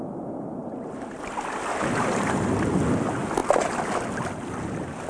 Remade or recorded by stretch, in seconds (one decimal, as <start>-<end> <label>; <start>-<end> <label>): 0.0-5.1 recorded